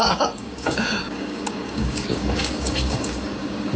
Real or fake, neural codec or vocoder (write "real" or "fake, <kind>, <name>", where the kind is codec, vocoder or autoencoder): fake, codec, DAC